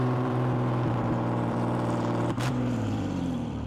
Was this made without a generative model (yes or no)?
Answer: no